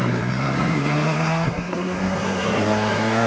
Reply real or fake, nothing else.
fake